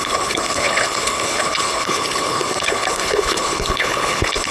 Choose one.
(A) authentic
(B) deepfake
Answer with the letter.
B